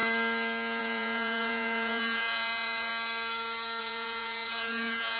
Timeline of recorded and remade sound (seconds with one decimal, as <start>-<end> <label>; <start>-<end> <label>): 0.0-0.8 recorded; 0.8-2.9 remade; 2.9-3.8 recorded; 3.8-5.2 remade